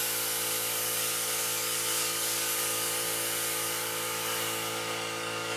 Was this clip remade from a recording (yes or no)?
yes